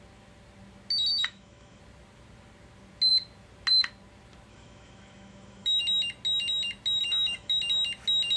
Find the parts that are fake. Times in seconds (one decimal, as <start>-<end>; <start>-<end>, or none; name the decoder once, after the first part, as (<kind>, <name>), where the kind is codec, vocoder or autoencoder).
1.1-1.8 (autoencoder, DAC-VAE); 4.5-5.8; 7.0-7.6